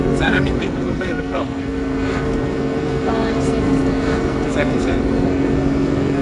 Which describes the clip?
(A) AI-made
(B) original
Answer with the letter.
A